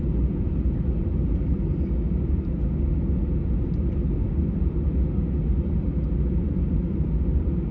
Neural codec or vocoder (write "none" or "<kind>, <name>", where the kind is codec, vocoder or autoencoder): none